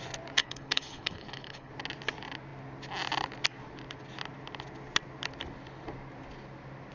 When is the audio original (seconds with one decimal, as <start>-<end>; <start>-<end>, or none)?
0.0-0.4; 1.7-6.9

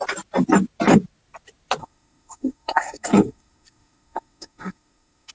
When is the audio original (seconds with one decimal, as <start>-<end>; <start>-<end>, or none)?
0.0-1.8

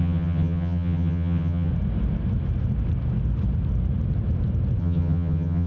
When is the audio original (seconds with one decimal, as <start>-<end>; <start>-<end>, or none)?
1.7-4.8

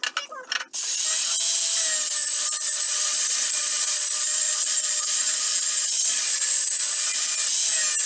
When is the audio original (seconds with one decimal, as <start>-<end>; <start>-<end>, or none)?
0.0-2.2; 7.1-8.1